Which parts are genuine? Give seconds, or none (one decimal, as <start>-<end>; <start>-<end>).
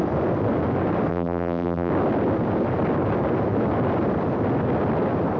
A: 0.0-1.1; 1.9-5.4